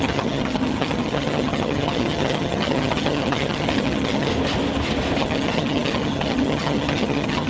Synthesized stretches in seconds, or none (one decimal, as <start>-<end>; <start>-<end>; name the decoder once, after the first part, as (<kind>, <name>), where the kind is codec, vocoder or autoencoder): 0.0-4.3 (vocoder, HiFi-GAN); 5.2-7.5